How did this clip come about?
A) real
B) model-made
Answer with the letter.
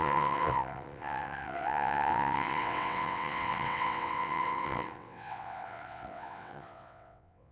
B